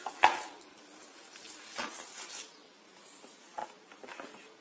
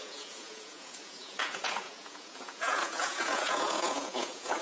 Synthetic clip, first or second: second